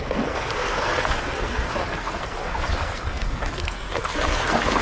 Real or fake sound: fake